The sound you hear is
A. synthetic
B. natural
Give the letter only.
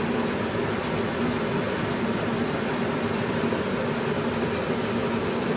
B